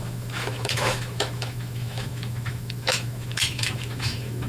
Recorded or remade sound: remade